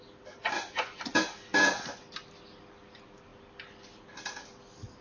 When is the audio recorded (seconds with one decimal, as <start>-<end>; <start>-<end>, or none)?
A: 0.0-0.4; 1.0-5.0